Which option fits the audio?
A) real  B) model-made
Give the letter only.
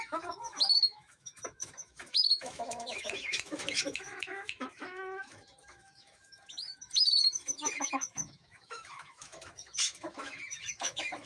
B